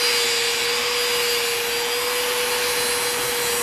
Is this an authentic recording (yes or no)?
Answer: yes